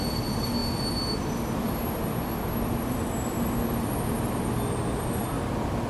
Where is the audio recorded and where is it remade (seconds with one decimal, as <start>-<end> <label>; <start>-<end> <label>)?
0.0-5.9 recorded